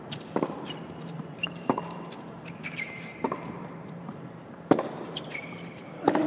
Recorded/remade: remade